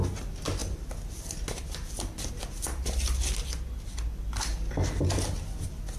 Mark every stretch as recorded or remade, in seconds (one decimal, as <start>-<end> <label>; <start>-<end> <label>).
0.0-6.0 recorded